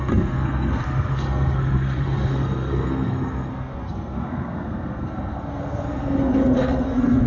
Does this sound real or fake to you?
fake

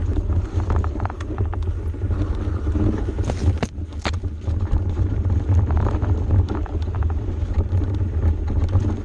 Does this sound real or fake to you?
real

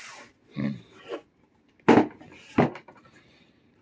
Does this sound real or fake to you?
real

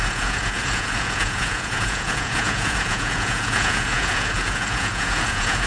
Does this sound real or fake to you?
fake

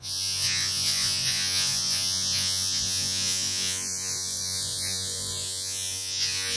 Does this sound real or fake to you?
fake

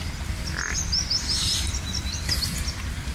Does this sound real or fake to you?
real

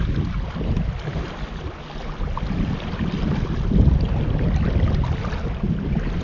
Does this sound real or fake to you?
real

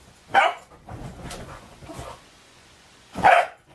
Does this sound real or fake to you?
fake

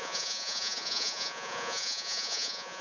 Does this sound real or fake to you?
fake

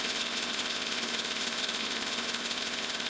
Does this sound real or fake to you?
fake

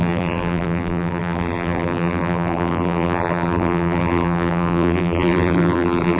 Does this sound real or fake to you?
fake